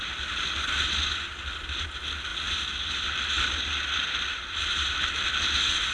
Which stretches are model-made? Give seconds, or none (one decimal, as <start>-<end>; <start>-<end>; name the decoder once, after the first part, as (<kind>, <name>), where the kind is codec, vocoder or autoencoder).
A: none